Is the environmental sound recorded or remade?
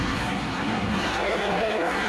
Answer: remade